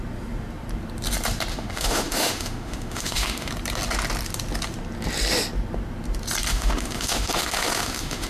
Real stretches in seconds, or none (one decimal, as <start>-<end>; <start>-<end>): 0.0-1.5; 3.5-6.5